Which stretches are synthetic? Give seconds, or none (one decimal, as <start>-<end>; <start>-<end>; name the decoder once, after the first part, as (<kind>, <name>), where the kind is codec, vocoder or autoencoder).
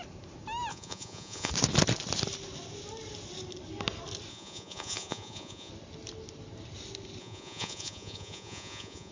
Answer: 0.7-1.5 (vocoder, Vocos); 4.3-5.7; 7.2-9.1